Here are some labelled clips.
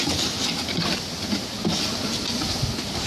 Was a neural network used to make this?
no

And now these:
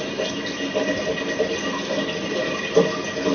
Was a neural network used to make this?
no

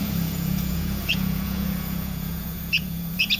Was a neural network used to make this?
yes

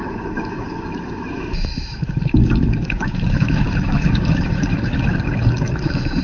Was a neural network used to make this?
yes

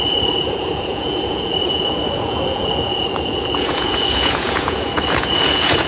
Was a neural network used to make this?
yes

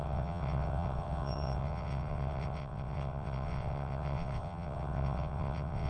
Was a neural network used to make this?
yes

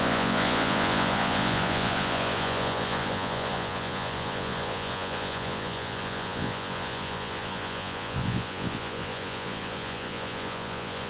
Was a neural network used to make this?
yes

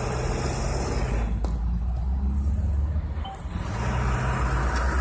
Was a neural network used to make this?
no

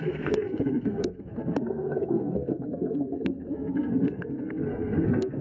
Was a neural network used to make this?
yes